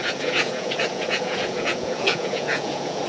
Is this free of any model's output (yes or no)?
no